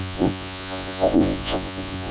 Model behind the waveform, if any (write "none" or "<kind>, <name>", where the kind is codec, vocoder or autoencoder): vocoder, Vocos